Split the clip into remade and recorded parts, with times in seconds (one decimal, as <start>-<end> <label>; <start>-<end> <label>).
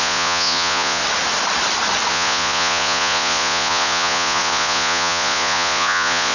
0.0-1.0 remade; 1.0-2.1 recorded; 2.1-6.3 remade